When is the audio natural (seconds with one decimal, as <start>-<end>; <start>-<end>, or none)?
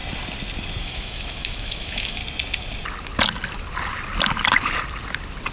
0.0-0.8; 2.2-5.5